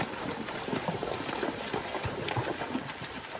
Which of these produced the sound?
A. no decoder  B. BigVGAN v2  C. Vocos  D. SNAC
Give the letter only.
A